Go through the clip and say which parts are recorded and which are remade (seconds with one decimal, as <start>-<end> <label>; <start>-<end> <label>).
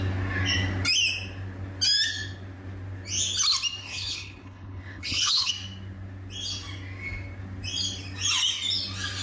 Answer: 0.0-3.8 recorded; 3.8-5.5 remade; 5.5-9.2 recorded